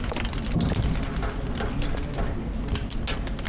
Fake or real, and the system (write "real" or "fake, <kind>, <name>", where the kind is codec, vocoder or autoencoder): real